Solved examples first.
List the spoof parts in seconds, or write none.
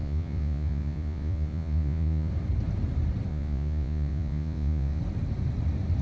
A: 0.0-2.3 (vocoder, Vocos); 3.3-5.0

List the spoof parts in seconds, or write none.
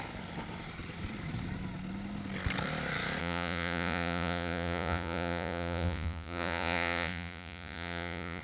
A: 3.2-8.4 (vocoder, Vocos)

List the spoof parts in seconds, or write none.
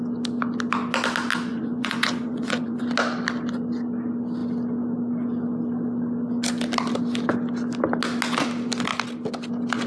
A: 1.5-2.9 (vocoder, Vocos)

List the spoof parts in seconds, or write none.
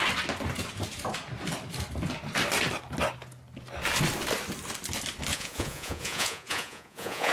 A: 5.3-7.3 (vocoder, Vocos)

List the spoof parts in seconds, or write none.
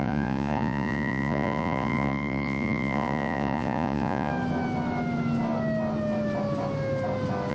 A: 0.0-4.3 (vocoder, Vocos)